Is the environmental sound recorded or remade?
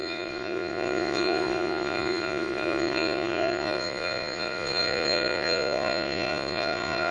remade